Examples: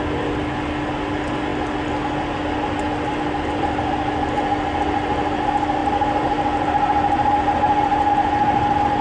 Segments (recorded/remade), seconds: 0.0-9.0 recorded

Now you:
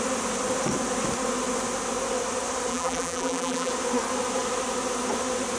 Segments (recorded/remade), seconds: 0.0-2.7 recorded; 2.7-3.7 remade; 3.7-5.6 recorded

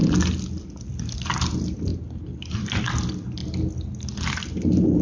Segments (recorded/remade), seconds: 0.0-0.9 recorded; 0.9-1.9 remade; 1.9-2.5 recorded; 2.5-5.0 remade

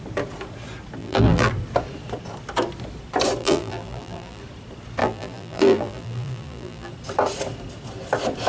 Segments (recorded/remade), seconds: 0.0-1.0 recorded; 1.0-1.5 remade; 1.5-3.4 recorded; 3.4-4.4 remade; 4.4-5.0 recorded; 5.0-6.9 remade; 6.9-8.5 recorded

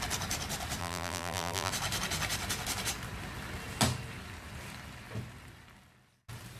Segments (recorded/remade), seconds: 0.0-0.8 recorded; 0.8-1.7 remade; 1.7-6.6 recorded

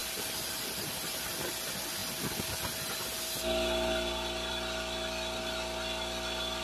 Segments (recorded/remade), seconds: 0.0-1.3 remade; 1.3-6.6 recorded

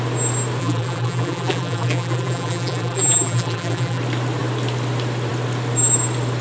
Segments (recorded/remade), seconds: 0.0-0.6 recorded; 0.6-4.0 remade; 4.0-6.4 recorded

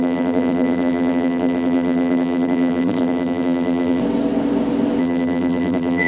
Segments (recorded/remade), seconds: 0.0-4.0 remade; 4.0-5.0 recorded; 5.0-6.1 remade